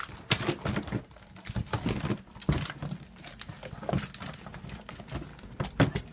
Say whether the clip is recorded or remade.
recorded